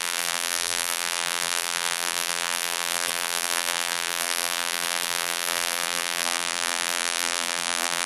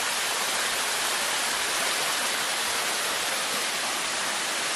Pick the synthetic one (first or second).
first